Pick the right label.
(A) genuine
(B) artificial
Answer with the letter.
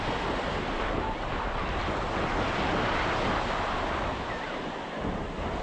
A